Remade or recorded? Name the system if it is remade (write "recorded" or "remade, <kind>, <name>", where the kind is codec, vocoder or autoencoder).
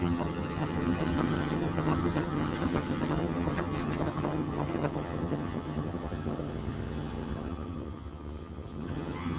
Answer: remade, vocoder, HiFi-GAN